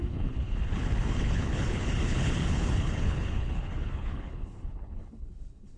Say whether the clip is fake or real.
fake